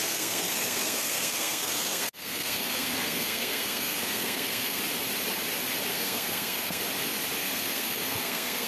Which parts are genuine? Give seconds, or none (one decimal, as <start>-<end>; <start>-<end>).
4.8-5.9; 6.8-7.4